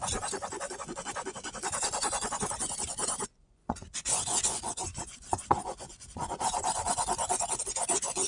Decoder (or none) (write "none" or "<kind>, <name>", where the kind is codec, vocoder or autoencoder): vocoder, Vocos